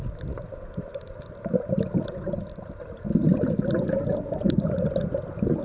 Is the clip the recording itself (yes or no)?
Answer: yes